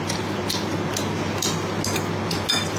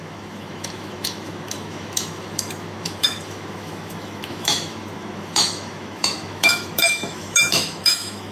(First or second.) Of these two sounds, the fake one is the second